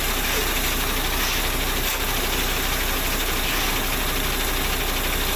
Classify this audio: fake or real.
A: real